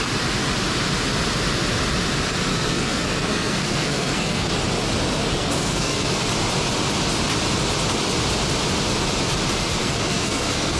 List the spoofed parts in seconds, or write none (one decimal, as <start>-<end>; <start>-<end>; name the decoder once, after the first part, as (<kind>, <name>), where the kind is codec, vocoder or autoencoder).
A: 2.5-4.5 (codec, SNAC); 5.3-6.2; 9.8-10.8